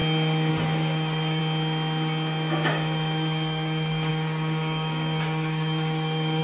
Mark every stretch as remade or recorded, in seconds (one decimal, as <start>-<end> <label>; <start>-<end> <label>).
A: 0.0-0.5 recorded; 0.5-1.4 remade; 1.4-2.7 recorded; 2.7-6.4 remade